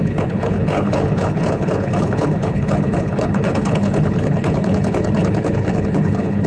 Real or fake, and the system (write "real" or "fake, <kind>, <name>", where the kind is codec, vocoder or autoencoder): fake, codec, HILCodec